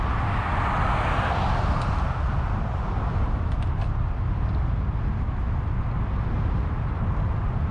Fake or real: real